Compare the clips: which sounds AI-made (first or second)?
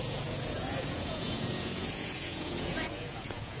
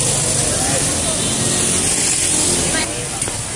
first